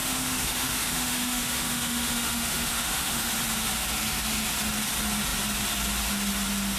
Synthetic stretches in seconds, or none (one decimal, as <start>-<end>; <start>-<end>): 0.0-3.3